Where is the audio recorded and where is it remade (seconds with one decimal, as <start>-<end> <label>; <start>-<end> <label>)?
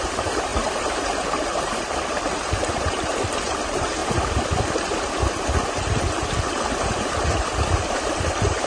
0.0-4.0 remade; 4.0-7.0 recorded; 7.0-8.7 remade